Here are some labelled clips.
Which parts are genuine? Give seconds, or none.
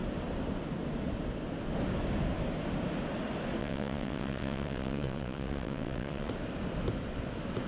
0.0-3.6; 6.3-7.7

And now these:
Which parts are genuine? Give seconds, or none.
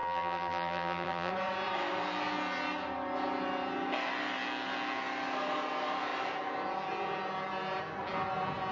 1.3-8.7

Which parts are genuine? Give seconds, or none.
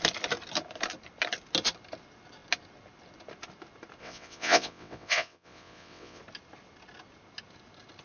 0.0-4.0; 6.2-8.0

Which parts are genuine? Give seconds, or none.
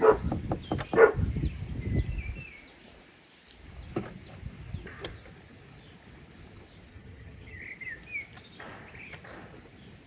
0.0-6.9; 7.6-10.1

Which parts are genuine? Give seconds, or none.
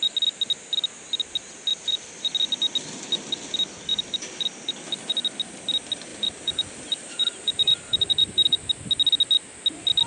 0.0-1.7; 2.2-3.9; 5.1-6.1; 8.7-10.1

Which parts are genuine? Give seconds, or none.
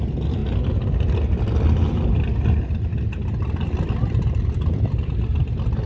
none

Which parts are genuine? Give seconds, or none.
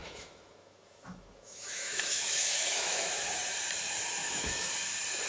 3.2-4.2; 4.7-5.3